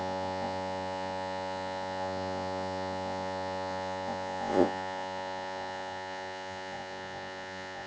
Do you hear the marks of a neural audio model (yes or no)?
yes